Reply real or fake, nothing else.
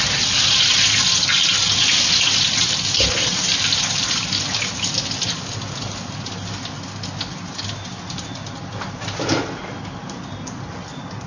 real